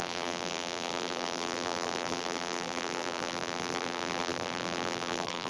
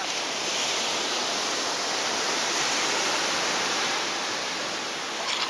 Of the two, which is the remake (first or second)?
first